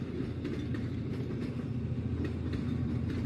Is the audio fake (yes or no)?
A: yes